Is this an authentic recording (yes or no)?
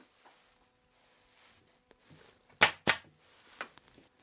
yes